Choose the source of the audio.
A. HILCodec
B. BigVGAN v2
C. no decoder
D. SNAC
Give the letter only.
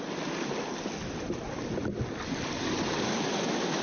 C